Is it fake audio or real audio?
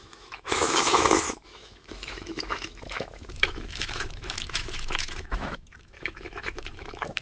fake